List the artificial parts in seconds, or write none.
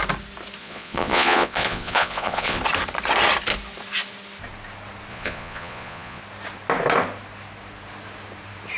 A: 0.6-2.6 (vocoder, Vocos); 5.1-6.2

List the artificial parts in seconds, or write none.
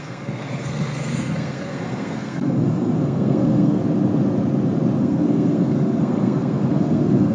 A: 0.0-3.8 (codec, SNAC); 5.0-7.3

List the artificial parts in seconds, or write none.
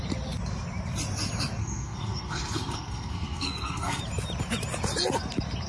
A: 1.6-4.0 (codec, SNAC)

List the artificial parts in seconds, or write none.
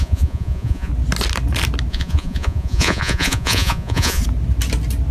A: 0.0-0.9 (vocoder, Vocos); 1.9-4.2